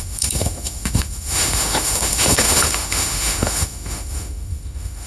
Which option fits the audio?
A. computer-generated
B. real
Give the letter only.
A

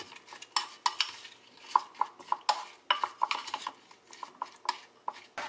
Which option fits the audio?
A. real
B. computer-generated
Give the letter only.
A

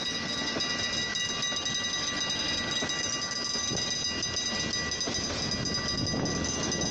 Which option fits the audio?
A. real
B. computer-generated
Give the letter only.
A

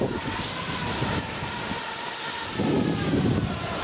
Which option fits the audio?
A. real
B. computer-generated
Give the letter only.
A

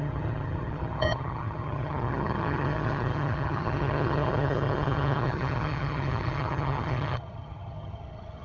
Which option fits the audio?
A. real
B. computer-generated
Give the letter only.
B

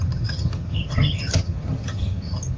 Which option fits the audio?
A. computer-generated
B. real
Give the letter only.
A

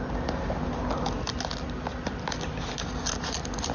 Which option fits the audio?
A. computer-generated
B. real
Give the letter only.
B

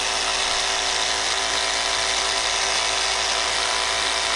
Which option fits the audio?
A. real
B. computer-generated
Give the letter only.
A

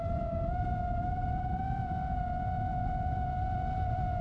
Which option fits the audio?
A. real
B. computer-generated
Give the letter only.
A